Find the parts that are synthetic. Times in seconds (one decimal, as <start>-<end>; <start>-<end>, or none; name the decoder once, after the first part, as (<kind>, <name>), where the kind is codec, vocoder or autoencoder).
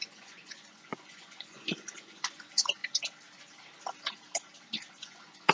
0.0-2.8 (vocoder, Vocos); 4.9-5.5